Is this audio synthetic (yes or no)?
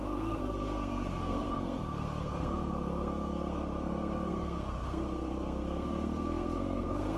yes